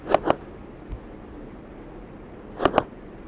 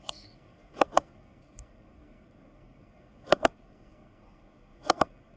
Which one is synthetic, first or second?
second